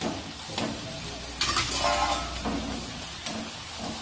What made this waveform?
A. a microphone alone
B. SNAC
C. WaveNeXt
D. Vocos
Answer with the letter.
A